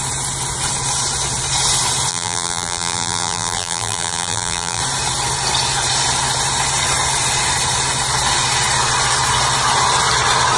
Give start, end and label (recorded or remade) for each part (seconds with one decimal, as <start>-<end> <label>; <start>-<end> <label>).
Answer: 0.0-2.1 recorded; 2.1-4.8 remade; 4.8-10.6 recorded